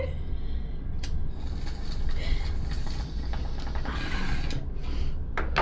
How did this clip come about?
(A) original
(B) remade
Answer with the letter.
A